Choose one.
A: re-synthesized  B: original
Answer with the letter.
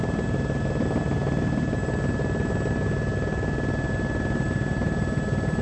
B